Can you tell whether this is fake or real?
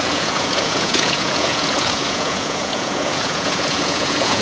fake